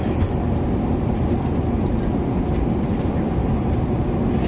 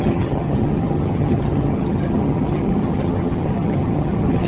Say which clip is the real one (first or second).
first